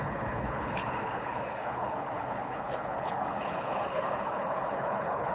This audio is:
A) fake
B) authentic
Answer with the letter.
A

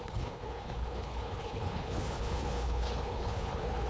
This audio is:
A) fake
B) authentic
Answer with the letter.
A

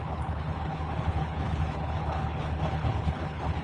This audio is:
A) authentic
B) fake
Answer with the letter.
B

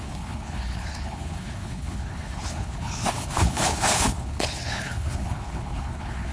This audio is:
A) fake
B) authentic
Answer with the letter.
A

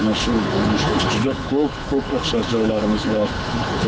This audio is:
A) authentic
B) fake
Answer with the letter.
B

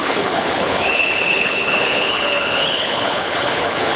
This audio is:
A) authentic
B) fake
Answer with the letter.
B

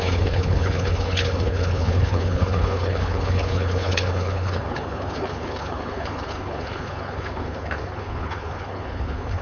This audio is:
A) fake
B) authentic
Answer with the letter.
A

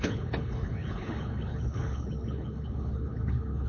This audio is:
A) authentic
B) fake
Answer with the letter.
B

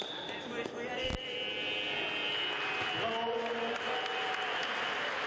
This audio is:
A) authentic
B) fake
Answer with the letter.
A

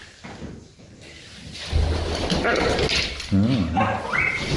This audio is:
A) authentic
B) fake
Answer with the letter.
A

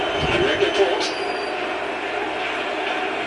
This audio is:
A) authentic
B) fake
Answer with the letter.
A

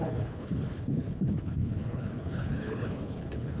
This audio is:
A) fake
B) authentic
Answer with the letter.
A